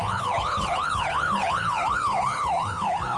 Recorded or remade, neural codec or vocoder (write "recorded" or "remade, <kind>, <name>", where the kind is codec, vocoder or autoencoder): remade, codec, HILCodec